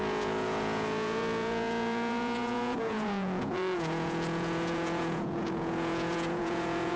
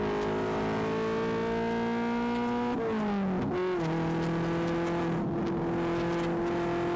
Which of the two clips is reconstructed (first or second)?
first